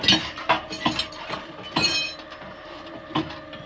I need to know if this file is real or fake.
real